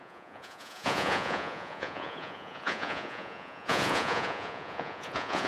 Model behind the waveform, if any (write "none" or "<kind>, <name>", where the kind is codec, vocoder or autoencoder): vocoder, Vocos